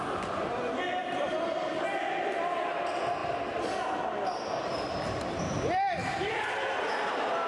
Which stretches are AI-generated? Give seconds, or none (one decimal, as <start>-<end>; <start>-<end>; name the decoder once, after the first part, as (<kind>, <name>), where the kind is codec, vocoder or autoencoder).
1.0-1.7 (vocoder, BigVGAN v2); 6.0-7.5